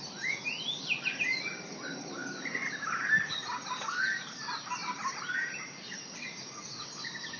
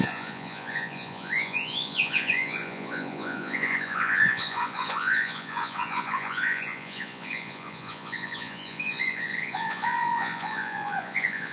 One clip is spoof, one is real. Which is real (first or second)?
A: first